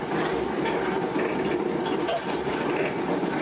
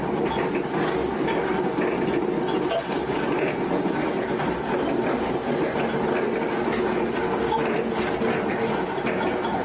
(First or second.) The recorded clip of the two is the second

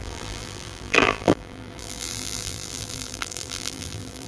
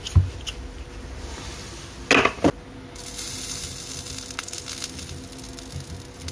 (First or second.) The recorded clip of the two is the second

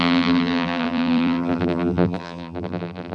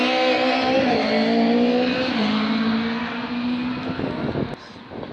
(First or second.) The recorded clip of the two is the second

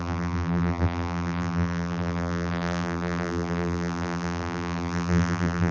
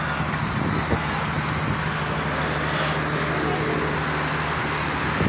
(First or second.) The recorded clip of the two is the second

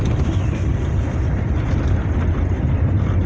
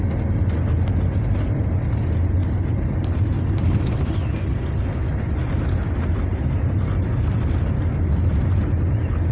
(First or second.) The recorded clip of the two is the second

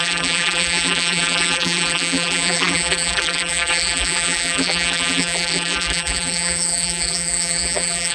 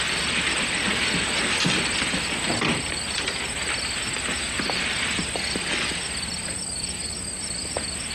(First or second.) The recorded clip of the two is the second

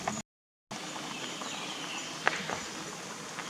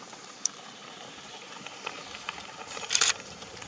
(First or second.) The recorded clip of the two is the first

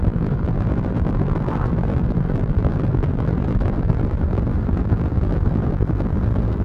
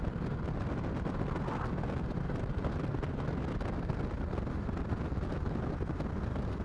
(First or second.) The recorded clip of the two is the second